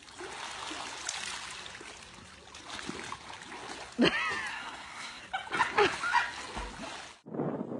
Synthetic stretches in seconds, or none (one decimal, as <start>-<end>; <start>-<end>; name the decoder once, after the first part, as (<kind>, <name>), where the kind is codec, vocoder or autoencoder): 4.5-5.2 (codec, SNAC)